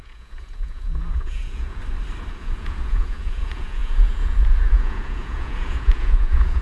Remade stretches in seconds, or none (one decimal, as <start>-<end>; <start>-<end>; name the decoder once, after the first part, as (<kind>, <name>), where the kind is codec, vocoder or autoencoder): 0.0-1.8 (vocoder, Vocos); 2.3-6.6